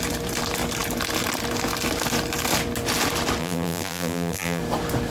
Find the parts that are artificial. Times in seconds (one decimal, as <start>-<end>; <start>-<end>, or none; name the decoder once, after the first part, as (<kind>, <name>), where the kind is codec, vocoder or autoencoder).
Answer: 3.4-4.6 (vocoder, BigVGAN v2)

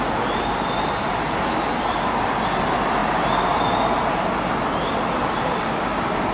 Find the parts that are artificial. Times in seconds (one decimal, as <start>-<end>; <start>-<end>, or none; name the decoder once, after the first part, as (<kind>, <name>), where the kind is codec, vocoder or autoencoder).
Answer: none

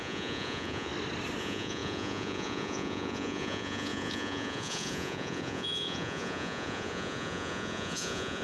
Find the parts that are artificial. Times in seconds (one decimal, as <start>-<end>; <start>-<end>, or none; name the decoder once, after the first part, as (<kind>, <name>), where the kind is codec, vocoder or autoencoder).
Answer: 0.0-0.9 (vocoder, Vocos); 1.4-8.4

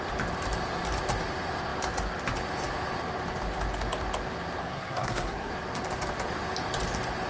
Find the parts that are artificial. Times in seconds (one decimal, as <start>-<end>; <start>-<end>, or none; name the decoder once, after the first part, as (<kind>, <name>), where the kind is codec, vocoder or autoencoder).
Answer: 4.6-5.5 (codec, SNAC)

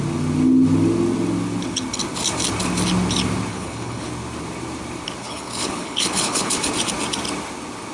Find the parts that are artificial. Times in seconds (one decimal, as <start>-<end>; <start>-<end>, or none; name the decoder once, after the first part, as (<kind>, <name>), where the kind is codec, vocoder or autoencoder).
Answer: 3.5-4.1 (codec, HILCodec); 5.2-6.7

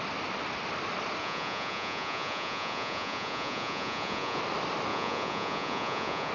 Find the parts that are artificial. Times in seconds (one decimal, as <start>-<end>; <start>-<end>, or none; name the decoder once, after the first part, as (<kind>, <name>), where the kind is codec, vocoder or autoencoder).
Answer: 1.2-4.4 (vocoder, Vocos); 4.9-6.3

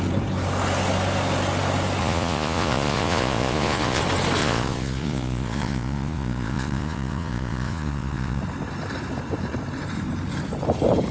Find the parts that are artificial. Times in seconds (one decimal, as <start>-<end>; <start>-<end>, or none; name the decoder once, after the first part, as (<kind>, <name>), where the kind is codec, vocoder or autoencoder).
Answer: 2.0-4.0 (vocoder, Vocos); 4.4-8.4

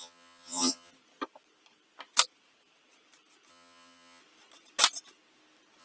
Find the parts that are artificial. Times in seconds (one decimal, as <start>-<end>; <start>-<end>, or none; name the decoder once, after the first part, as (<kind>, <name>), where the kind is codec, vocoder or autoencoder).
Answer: 0.0-0.9 (vocoder, HiFi-GAN); 3.5-4.2